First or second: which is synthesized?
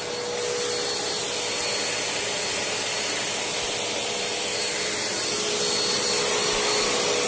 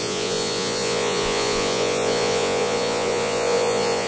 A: second